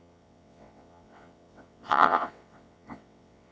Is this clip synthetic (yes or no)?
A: yes